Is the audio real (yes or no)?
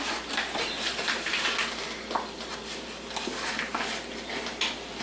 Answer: yes